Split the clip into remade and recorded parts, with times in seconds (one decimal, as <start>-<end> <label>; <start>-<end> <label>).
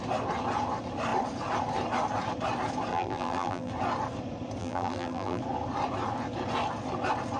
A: 0.0-2.9 recorded; 2.9-3.7 remade; 3.7-4.6 recorded; 4.6-5.4 remade; 5.4-7.4 recorded